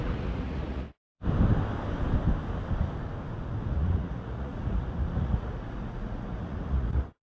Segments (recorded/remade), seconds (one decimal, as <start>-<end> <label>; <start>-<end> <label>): 0.0-1.0 remade; 1.0-3.7 recorded; 3.7-7.2 remade